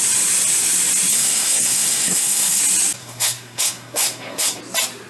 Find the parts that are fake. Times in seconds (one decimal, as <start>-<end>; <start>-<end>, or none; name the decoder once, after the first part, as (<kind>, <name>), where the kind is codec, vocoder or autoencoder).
1.1-2.6 (codec, SNAC); 3.0-4.6

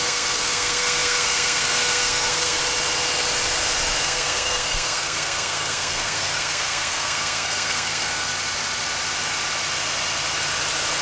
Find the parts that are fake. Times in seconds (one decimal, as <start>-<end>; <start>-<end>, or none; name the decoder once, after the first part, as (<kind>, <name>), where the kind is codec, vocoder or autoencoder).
0.0-2.6 (codec, SNAC); 4.0-8.3

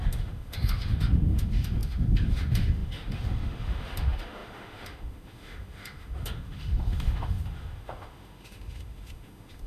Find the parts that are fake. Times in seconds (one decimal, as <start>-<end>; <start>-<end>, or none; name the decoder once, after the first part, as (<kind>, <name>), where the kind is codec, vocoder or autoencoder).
0.0-9.7 (autoencoder, DAC-VAE)